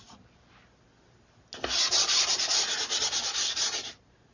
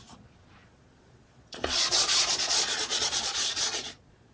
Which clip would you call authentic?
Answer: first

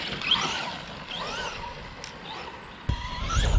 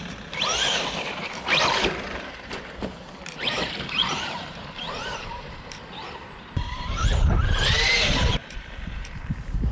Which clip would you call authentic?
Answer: first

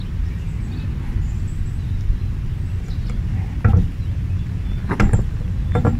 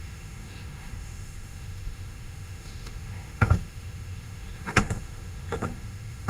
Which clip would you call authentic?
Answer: first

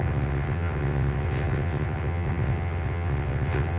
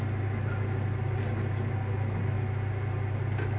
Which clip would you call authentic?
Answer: second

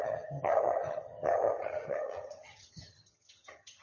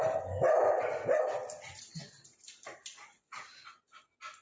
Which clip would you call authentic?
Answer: second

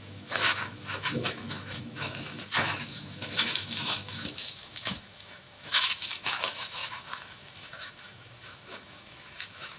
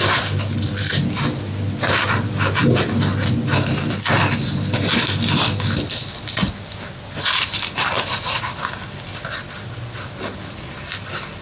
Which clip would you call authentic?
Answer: second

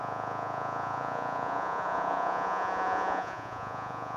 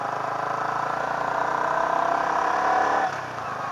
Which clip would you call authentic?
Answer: second